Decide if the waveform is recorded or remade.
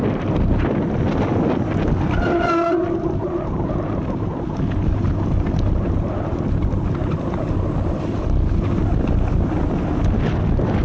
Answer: recorded